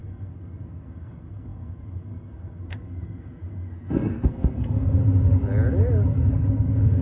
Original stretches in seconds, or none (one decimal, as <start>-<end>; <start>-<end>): 5.0-6.3